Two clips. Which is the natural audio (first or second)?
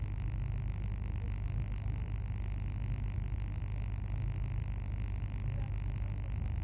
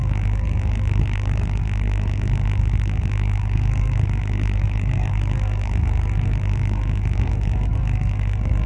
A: first